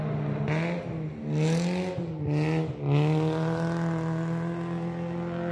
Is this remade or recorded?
recorded